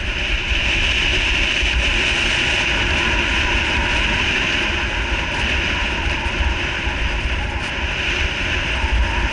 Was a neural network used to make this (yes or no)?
no